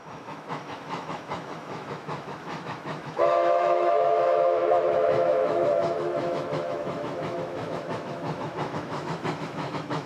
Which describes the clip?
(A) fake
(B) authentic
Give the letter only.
A